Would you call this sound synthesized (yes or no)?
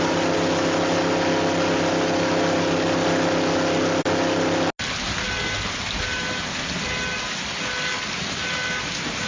no